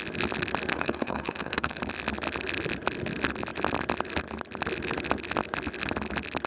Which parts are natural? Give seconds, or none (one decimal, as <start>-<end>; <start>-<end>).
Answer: 0.0-0.7; 1.8-6.5